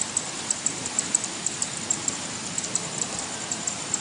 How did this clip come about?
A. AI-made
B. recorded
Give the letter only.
B